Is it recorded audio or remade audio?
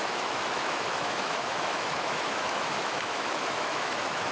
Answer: remade